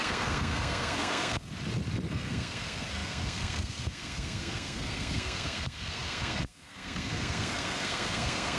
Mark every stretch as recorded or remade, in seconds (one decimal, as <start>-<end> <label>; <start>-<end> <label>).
0.0-1.5 remade; 1.5-2.1 recorded; 2.1-8.6 remade